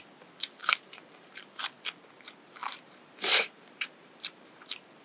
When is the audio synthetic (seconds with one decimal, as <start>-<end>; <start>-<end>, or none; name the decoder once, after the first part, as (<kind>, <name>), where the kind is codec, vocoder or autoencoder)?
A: 0.6-1.6 (vocoder, BigVGAN v2); 2.6-4.6